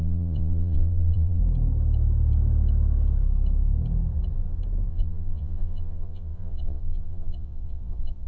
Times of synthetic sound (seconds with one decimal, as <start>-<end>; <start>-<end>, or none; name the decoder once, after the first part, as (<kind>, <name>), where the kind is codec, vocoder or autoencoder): 0.0-1.4 (vocoder, Vocos); 4.9-8.3